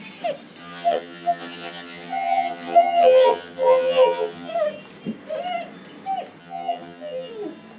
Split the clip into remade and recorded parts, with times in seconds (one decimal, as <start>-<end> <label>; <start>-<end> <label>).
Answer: 0.0-0.6 recorded; 0.6-4.5 remade; 4.5-6.4 recorded; 6.4-7.3 remade; 7.3-7.8 recorded